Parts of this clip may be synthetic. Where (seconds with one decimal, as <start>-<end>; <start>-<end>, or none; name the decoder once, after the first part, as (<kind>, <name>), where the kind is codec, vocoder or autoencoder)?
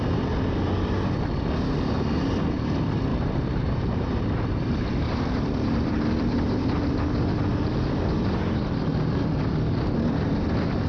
3.1-5.9 (vocoder, BigVGAN v2)